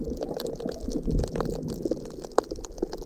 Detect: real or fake real